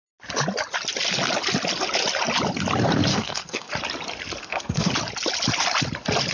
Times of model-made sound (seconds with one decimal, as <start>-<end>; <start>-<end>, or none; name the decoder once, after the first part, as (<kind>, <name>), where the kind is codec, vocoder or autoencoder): 3.1-3.7 (codec, SNAC); 4.4-4.9